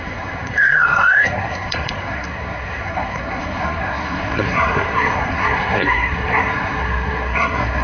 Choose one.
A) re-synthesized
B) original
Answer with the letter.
A